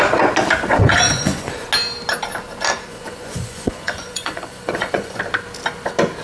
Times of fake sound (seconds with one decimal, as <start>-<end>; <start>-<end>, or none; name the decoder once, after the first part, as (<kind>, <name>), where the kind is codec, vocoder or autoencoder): 0.8-1.7 (vocoder, Vocos); 2.9-5.2